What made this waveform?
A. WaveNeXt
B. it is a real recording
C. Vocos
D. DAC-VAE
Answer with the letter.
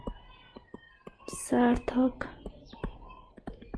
B